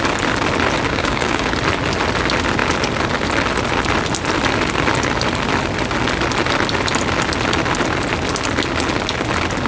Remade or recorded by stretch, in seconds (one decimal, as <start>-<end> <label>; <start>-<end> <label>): 0.0-0.9 recorded; 0.9-1.5 remade; 1.5-9.7 recorded